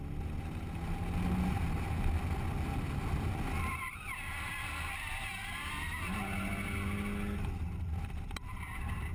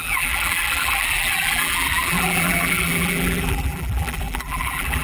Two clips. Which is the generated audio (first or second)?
second